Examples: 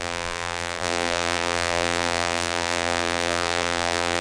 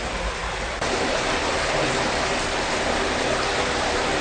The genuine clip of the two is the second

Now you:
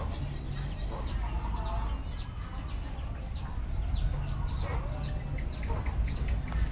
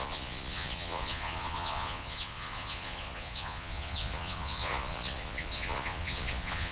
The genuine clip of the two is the first